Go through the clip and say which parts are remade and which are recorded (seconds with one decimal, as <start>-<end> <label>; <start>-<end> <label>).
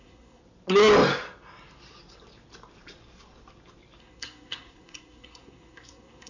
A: 0.0-0.4 remade; 0.4-4.0 recorded; 4.0-6.3 remade